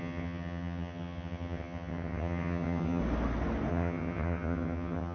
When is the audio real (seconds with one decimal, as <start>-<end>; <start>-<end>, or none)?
3.0-3.7